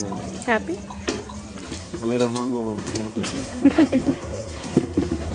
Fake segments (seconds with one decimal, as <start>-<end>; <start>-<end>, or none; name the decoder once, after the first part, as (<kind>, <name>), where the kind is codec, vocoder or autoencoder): 1.8-5.3 (codec, SNAC)